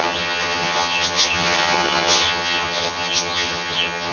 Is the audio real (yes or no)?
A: no